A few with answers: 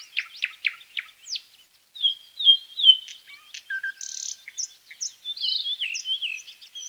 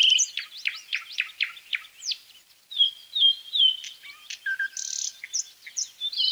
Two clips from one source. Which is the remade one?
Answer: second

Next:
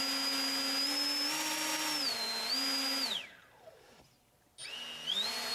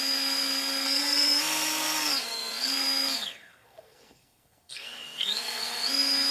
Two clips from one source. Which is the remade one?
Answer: second